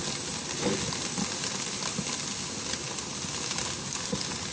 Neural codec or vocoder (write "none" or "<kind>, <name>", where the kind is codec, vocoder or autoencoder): none